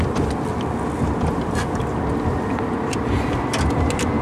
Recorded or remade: recorded